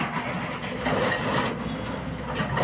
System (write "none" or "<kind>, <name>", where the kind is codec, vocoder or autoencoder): none